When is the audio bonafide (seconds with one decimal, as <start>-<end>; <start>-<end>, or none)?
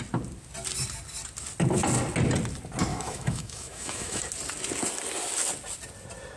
0.0-2.9; 4.2-6.4